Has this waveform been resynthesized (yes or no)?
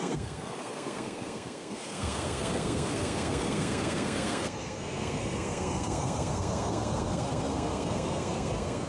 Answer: yes